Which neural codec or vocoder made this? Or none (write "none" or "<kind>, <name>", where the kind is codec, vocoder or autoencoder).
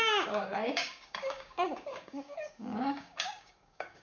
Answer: codec, DAC